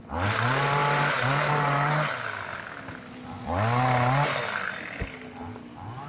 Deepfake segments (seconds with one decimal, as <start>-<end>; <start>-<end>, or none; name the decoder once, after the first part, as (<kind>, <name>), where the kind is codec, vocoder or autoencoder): none